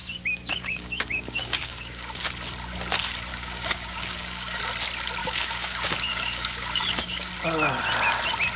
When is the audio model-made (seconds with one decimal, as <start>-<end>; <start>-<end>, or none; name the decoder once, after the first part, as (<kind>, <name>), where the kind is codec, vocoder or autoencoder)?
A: 0.0-2.2 (codec, DAC); 3.3-4.6; 5.2-7.3